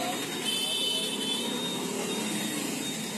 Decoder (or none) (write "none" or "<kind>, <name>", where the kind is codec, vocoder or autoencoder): none